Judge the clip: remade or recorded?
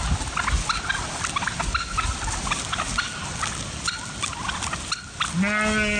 recorded